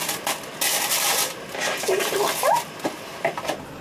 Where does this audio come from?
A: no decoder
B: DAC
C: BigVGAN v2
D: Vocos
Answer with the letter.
A